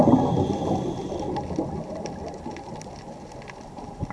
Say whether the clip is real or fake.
real